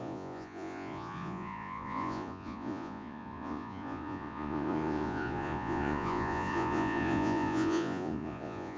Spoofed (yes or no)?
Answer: yes